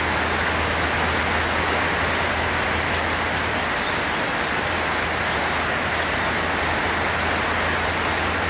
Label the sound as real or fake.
real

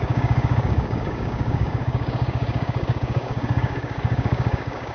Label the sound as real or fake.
fake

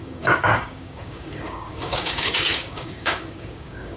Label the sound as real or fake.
fake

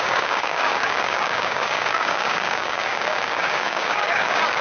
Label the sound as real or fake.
fake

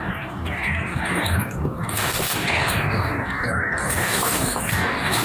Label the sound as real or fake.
fake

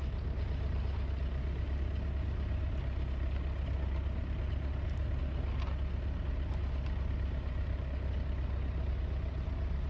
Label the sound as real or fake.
real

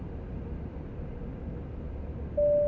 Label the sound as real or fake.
real